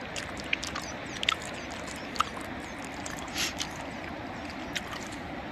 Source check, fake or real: real